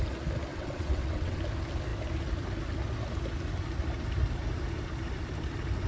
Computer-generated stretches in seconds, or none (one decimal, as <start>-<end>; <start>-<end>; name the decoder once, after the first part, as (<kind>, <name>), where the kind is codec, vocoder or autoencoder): 0.5-1.4 (vocoder, WaveNeXt)